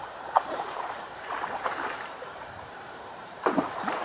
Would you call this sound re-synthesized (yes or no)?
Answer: yes